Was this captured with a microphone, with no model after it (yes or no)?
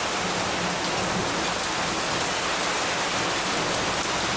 yes